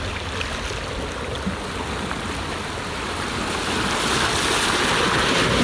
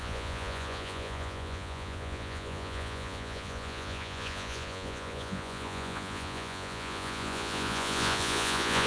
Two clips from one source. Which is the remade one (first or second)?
second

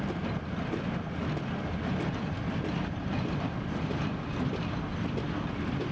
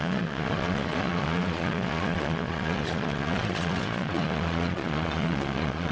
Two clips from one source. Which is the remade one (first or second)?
second